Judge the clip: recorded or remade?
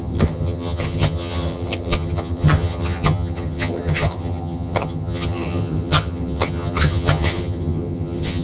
remade